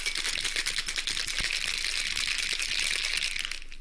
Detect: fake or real real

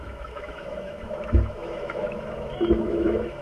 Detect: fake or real fake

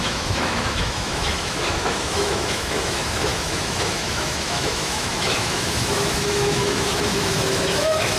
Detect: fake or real fake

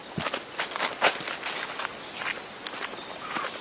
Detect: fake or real real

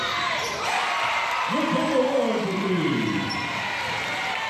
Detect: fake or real real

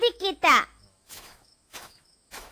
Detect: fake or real fake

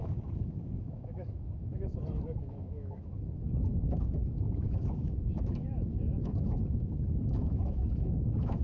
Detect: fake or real fake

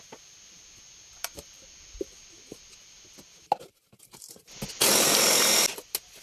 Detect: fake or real real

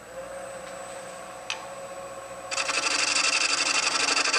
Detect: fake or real real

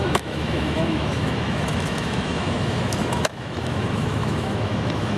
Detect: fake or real fake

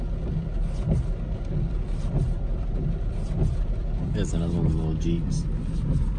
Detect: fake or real real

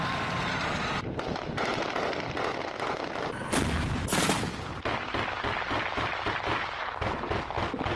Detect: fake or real real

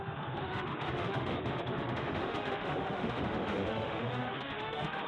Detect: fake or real fake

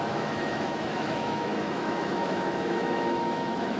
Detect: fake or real fake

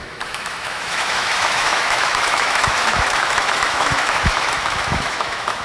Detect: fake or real fake